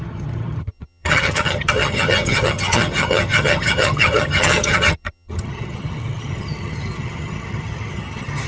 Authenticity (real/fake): fake